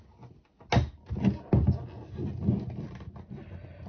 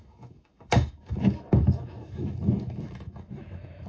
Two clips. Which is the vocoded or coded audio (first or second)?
second